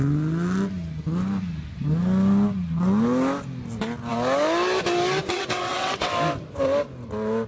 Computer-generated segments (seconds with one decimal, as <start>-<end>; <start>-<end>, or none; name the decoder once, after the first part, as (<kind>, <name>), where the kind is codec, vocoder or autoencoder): 5.2-6.1 (vocoder, WaveNeXt)